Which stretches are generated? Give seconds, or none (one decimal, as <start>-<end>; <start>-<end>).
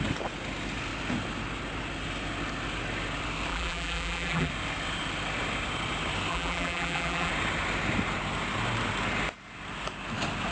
3.5-4.5; 6.3-7.3